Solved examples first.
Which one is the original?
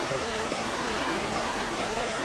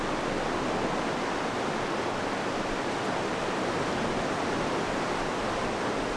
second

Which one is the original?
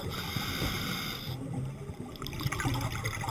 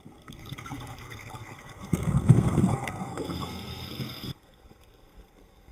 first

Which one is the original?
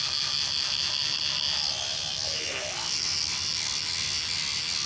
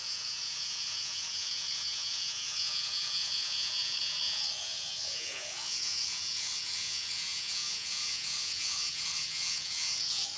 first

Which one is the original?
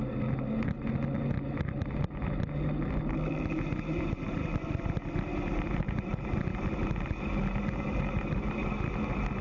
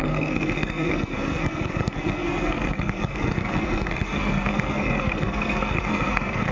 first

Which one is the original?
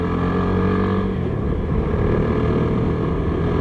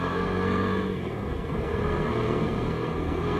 first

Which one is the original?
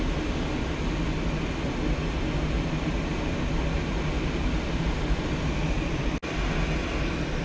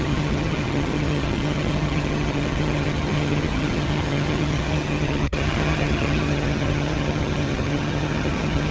first